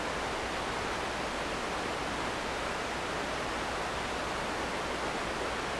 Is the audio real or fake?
real